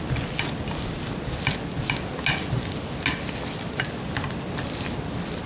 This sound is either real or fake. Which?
real